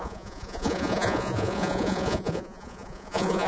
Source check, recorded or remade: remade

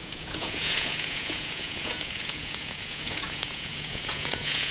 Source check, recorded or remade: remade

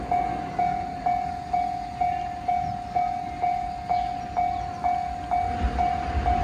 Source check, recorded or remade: recorded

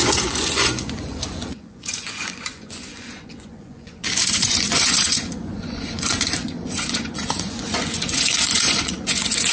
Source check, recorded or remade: remade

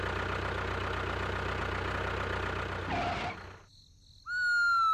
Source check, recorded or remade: recorded